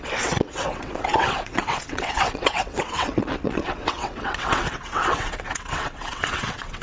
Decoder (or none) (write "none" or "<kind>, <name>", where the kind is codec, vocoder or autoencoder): vocoder, WaveNeXt